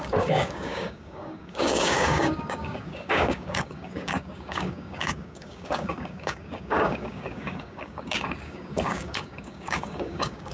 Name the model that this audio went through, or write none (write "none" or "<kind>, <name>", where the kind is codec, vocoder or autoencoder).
codec, DAC